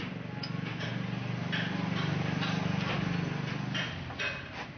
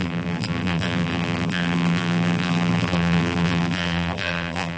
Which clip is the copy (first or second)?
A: second